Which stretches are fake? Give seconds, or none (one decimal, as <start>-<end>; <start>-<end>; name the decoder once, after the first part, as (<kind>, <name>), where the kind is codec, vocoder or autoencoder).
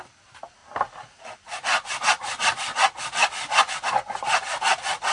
none